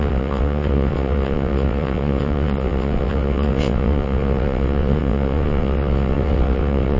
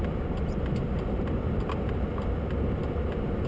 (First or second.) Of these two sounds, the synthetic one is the first